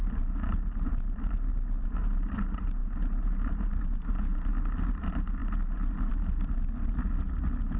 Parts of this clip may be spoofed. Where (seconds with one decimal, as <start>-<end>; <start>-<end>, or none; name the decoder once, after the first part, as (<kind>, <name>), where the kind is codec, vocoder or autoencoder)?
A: none